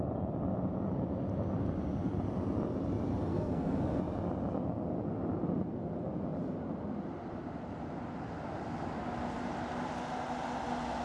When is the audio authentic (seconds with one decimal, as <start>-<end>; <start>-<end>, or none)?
0.0-3.3; 4.0-11.0